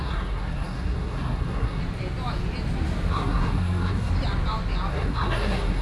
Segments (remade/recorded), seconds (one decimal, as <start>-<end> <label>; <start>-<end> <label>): 0.0-1.8 remade; 1.8-3.1 recorded; 3.1-4.1 remade; 4.1-4.9 recorded; 4.9-5.8 remade

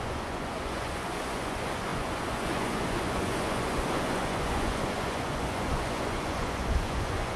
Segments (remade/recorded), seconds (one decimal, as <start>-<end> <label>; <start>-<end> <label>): 0.0-7.4 remade